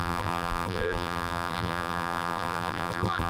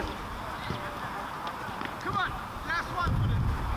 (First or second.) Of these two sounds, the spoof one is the first